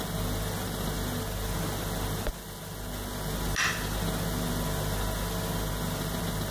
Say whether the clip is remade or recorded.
recorded